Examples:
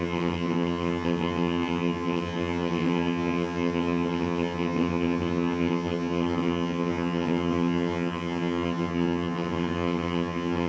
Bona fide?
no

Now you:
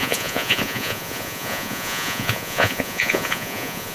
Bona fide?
no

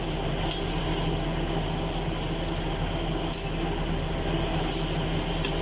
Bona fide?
yes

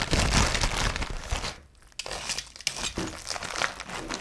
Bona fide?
yes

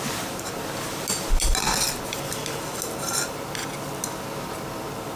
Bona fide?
yes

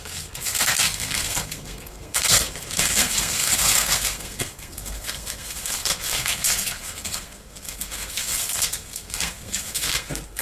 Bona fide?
no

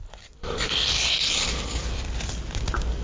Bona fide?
no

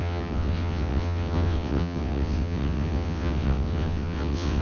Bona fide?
no